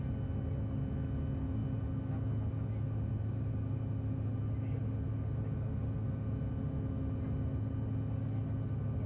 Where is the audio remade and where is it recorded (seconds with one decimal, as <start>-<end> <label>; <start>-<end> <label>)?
0.0-9.1 recorded